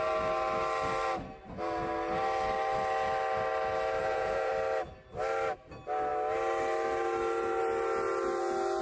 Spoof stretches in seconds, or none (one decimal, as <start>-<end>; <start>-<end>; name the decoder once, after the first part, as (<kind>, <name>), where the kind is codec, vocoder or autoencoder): 4.0-4.5 (vocoder, Vocos)